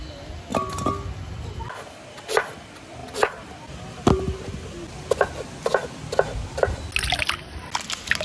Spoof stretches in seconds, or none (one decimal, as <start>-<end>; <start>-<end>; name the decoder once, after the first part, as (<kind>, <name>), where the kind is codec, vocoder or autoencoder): none

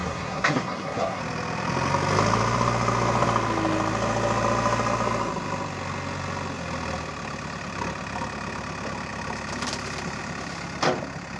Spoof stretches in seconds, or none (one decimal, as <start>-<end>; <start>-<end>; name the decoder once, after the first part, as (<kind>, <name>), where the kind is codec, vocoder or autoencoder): 0.0-1.2 (codec, SNAC)